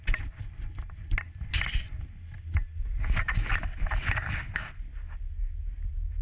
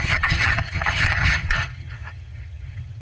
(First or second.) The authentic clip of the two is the first